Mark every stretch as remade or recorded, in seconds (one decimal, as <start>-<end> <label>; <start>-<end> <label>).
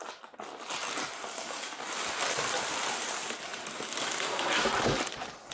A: 0.0-1.3 recorded; 1.3-1.9 remade; 1.9-5.5 recorded